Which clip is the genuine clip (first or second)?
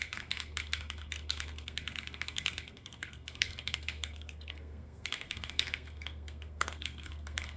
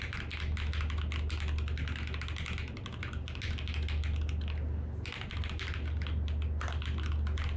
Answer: second